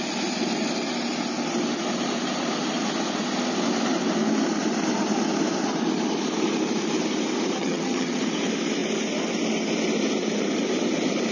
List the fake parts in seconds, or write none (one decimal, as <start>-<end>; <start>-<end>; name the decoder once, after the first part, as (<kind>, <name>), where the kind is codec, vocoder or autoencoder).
7.6-8.2 (vocoder, HiFi-GAN)